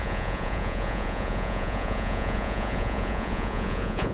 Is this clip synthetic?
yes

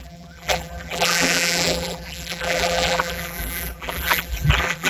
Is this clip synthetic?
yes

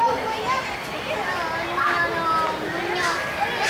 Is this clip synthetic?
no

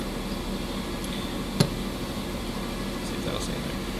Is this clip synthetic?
no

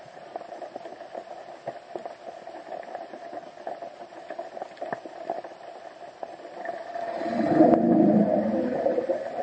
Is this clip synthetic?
no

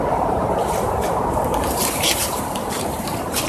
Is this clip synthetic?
yes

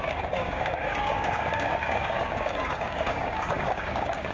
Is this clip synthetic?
yes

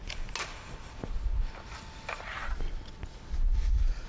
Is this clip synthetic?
no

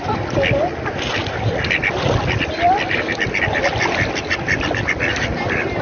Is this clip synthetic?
no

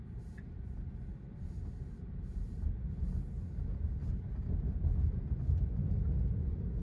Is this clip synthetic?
no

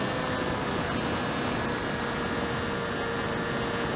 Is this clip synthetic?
no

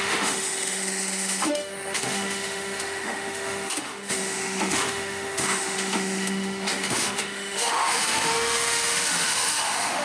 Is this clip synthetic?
yes